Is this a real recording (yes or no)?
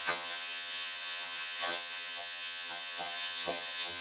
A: no